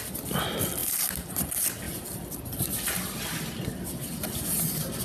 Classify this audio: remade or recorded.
recorded